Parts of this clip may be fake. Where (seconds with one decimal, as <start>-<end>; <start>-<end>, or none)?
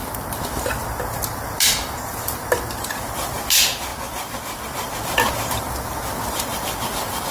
none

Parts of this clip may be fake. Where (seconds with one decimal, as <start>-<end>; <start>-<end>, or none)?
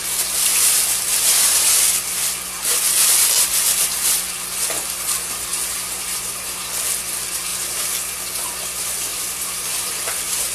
9.1-10.5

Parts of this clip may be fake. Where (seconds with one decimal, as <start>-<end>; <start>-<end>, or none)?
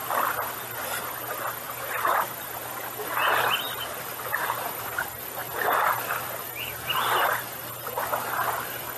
4.4-5.4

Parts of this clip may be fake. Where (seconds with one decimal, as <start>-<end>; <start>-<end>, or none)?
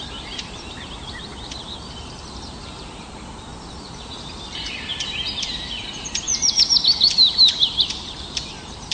0.0-8.9